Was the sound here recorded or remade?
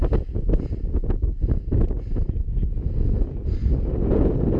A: recorded